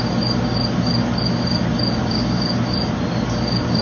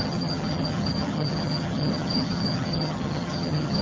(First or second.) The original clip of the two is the first